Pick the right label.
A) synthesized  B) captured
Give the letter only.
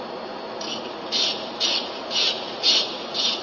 A